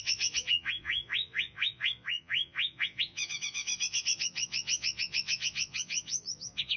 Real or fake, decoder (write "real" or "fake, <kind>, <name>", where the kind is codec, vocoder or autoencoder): fake, vocoder, Vocos